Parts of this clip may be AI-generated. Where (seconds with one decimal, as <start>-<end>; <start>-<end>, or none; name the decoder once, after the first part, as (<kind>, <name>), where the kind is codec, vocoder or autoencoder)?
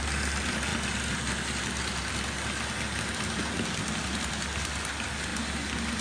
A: none